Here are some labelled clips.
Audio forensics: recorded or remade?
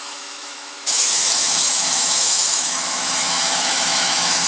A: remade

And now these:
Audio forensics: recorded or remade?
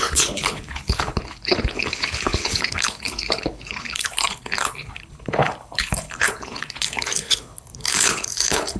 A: remade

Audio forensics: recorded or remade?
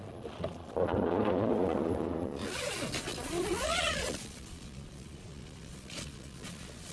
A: remade